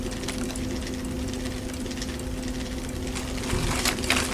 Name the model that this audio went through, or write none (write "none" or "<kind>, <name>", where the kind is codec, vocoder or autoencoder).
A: none